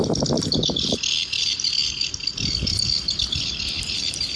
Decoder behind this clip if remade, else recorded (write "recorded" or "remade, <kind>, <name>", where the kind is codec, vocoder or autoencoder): recorded